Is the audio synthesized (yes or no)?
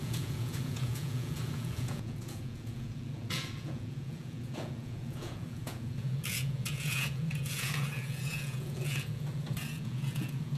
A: yes